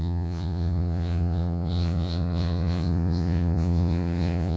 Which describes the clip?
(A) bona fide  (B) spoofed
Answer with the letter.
B